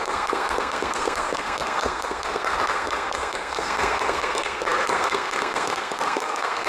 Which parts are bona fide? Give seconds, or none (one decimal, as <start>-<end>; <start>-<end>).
none